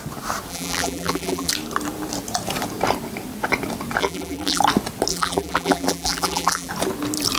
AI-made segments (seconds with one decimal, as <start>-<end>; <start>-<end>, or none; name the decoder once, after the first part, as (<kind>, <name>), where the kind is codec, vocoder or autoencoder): 0.5-1.5 (vocoder, BigVGAN v2); 4.0-4.6; 5.1-6.7